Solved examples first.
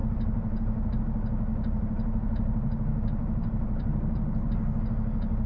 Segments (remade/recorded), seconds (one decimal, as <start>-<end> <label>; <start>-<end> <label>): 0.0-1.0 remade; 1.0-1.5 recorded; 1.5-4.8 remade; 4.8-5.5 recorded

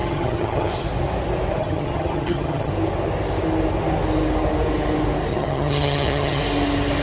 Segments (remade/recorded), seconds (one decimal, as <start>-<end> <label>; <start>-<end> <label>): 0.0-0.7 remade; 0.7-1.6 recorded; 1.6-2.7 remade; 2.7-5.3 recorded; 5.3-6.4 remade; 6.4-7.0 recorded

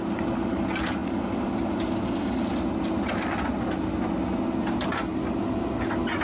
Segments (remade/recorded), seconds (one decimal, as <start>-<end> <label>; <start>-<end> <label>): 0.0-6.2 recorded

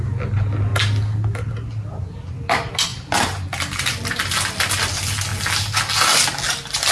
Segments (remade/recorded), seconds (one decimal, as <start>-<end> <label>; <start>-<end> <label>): 0.0-2.9 recorded; 2.9-3.9 remade; 3.9-6.9 recorded

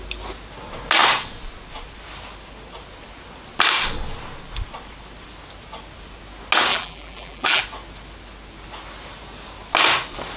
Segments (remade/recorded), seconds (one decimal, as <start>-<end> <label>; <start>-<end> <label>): 0.0-6.7 recorded; 6.7-7.6 remade; 7.6-10.4 recorded